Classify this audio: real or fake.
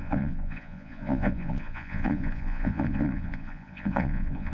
fake